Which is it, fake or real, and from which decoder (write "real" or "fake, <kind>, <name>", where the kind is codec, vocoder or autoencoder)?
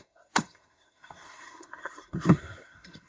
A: fake, codec, SNAC